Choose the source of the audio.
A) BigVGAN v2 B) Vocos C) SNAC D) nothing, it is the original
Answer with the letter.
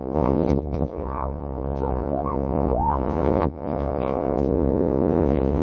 B